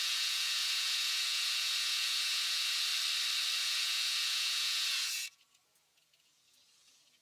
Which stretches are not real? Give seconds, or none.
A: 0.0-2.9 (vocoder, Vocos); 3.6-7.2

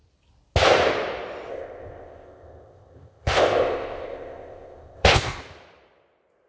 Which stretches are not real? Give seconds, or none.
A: 1.5-5.4 (codec, ZipCodec)

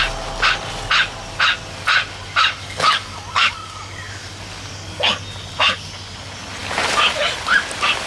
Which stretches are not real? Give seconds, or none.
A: 2.6-5.2 (codec, DAC)

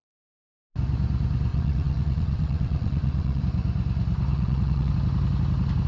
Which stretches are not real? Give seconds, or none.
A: 1.5-3.4 (vocoder, WaveNeXt); 4.3-4.9

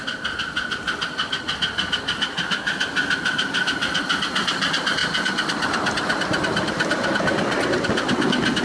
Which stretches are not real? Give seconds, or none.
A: none